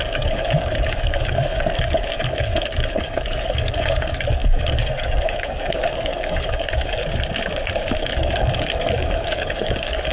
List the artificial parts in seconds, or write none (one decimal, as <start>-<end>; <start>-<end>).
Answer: 0.0-7.0; 8.0-10.1